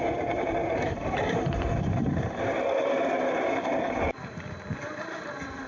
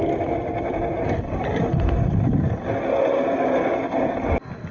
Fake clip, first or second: first